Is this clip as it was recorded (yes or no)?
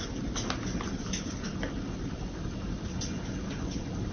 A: yes